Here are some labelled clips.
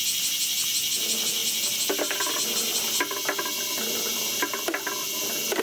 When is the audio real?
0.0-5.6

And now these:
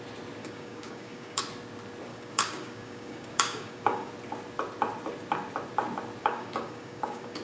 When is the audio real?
0.0-0.4; 1.4-2.1; 4.1-6.2

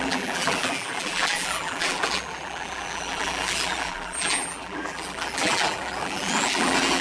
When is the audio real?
none

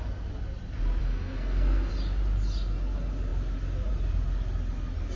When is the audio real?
0.0-1.0; 1.9-5.2

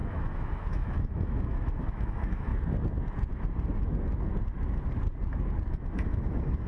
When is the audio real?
2.5-5.7

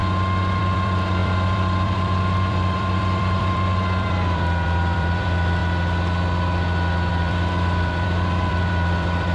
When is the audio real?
0.0-0.6; 5.6-7.1

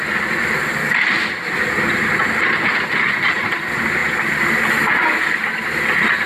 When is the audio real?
0.0-6.3